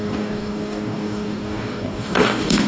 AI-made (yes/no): yes